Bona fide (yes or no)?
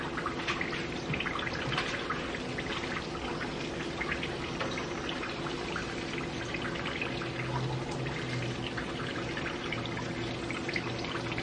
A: yes